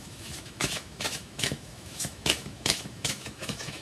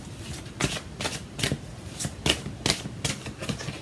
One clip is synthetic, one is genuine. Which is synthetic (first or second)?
first